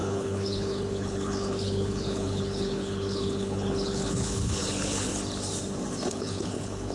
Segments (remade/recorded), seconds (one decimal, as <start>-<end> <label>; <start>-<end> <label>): 0.0-5.1 remade; 5.1-6.1 recorded; 6.1-6.9 remade